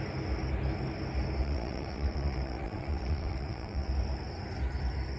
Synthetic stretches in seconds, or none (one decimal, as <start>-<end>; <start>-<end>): 1.4-3.9